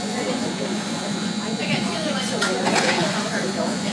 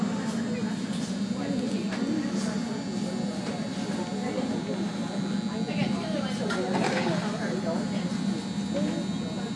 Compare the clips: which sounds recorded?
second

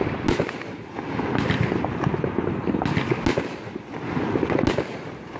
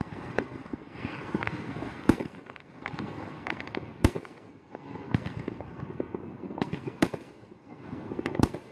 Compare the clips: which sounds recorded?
first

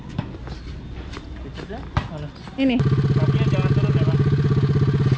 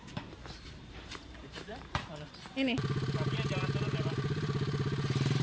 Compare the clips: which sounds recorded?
first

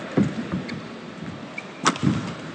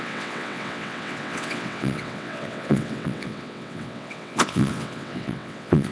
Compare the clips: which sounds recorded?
first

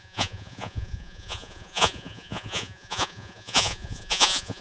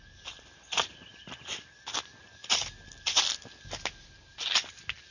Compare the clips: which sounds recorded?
second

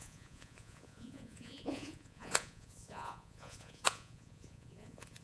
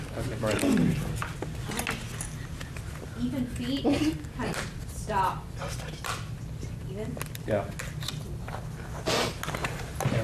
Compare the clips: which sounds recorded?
second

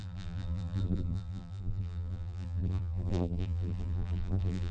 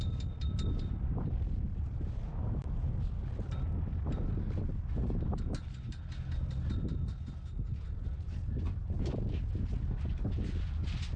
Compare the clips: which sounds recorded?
second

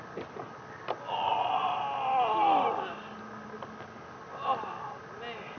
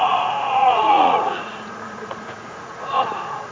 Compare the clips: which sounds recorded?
first